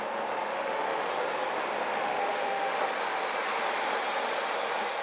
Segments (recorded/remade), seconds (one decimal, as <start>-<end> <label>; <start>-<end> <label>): 0.0-0.5 recorded; 0.5-1.1 remade; 1.1-1.9 recorded; 1.9-2.7 remade; 2.7-5.0 recorded